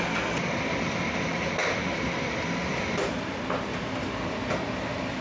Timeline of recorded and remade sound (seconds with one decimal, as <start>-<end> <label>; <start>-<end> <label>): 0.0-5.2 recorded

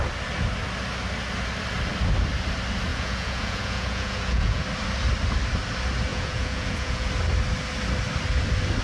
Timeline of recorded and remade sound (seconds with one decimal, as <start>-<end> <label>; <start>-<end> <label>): 0.0-2.9 recorded; 2.9-4.6 remade; 4.6-6.1 recorded; 6.1-7.1 remade; 7.1-8.8 recorded

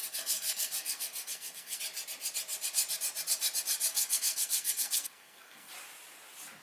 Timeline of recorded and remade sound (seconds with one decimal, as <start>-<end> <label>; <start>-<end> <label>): 0.0-1.8 remade; 1.8-3.9 recorded; 3.9-5.7 remade; 5.7-6.6 recorded

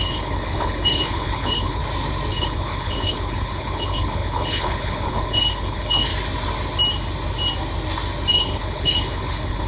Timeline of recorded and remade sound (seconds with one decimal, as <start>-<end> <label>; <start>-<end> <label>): 0.0-1.8 remade; 1.8-2.3 recorded; 2.3-6.1 remade; 6.1-8.3 recorded; 8.3-9.7 remade

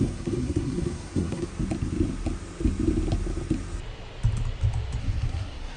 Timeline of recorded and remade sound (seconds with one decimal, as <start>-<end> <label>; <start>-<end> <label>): 0.0-1.5 remade; 1.5-5.0 recorded; 5.0-5.8 remade